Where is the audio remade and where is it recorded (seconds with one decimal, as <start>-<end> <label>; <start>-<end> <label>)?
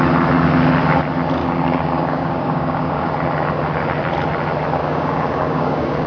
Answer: 0.0-1.4 recorded; 1.4-3.1 remade; 3.1-4.8 recorded; 4.8-6.1 remade